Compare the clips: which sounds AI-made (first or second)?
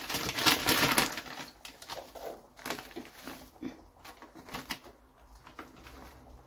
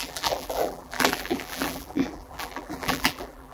second